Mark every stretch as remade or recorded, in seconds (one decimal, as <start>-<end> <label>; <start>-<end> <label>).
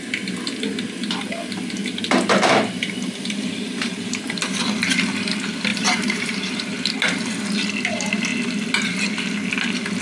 0.0-1.4 recorded; 1.4-4.4 remade; 4.4-5.7 recorded; 5.7-6.8 remade; 6.8-10.0 recorded